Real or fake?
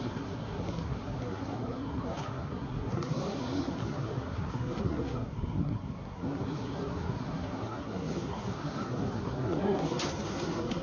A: fake